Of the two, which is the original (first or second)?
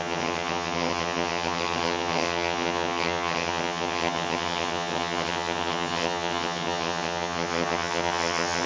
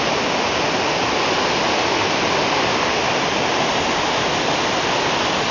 second